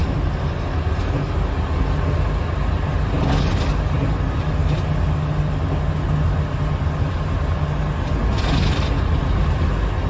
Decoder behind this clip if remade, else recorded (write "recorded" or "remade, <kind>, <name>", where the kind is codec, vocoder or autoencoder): recorded